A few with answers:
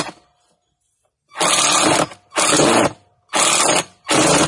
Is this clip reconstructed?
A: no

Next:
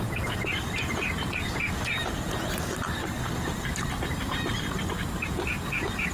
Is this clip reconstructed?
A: yes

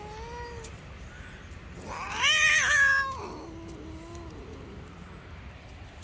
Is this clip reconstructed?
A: no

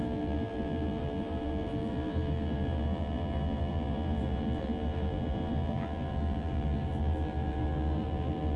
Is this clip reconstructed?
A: yes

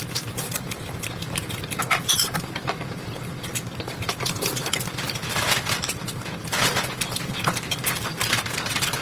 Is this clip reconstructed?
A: yes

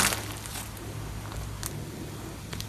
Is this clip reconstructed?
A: no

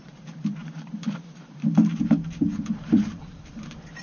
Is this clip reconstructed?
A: yes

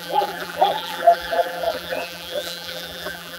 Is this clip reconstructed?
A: yes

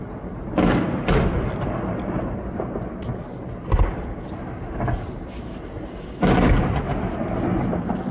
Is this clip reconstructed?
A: no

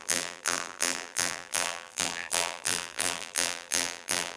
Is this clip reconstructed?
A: yes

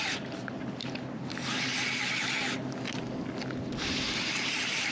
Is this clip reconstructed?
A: no